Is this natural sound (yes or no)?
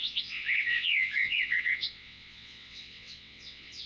no